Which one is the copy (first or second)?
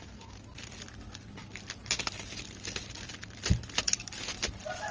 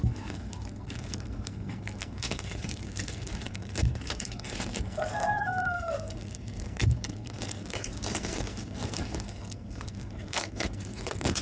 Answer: second